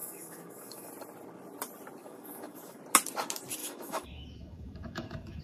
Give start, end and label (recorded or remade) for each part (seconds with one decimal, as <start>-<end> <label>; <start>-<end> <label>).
0.0-0.9 remade; 0.9-2.0 recorded; 2.0-2.8 remade; 2.8-3.6 recorded; 3.6-5.4 remade